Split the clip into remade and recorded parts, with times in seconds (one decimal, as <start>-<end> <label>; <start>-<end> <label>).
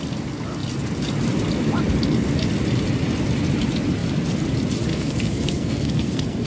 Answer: 0.0-4.9 recorded; 4.9-6.5 remade